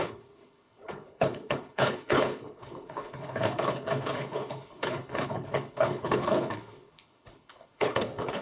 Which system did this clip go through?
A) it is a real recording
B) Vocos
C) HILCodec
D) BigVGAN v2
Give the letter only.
C